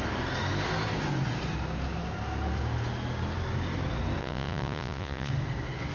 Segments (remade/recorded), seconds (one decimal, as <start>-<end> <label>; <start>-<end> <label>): 0.0-4.2 recorded; 4.2-5.3 remade; 5.3-5.9 recorded